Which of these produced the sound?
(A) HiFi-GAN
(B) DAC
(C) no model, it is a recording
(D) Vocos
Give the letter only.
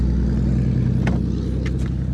C